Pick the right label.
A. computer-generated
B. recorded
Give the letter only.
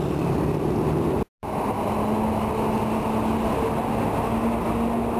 B